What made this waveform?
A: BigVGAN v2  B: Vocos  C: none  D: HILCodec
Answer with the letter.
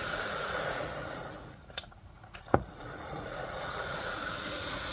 B